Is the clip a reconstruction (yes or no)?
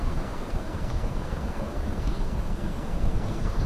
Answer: yes